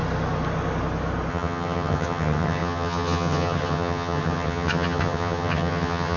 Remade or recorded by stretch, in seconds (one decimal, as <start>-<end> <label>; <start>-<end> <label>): 0.0-1.3 recorded; 1.3-6.2 remade